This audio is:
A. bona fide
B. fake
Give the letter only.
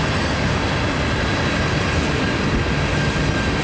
A